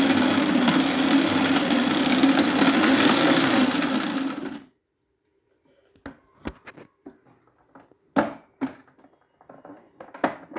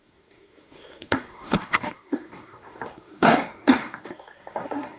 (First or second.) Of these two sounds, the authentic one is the first